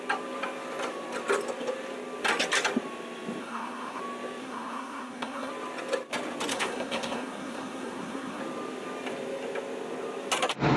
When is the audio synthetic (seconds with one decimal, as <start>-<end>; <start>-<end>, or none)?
3.4-4.0; 4.4-5.5; 6.5-8.4